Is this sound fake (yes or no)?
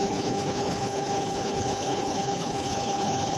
yes